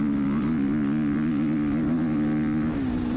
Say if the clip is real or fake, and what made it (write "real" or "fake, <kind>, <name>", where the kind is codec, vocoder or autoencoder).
real